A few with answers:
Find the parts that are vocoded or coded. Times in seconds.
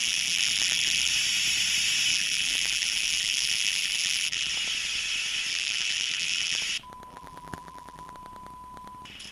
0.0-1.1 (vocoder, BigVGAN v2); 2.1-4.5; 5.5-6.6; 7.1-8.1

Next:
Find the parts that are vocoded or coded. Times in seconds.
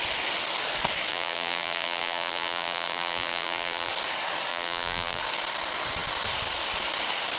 1.1-3.9 (vocoder, BigVGAN v2); 4.5-5.2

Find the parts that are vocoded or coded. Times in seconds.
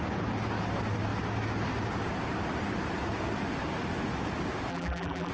4.7-5.3 (vocoder, BigVGAN v2)